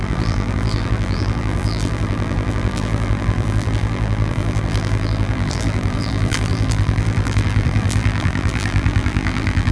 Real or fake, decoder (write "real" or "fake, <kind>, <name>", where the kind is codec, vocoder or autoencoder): fake, vocoder, BigVGAN v2